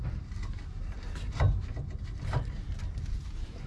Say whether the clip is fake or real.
real